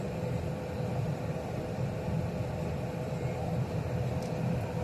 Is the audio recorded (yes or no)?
no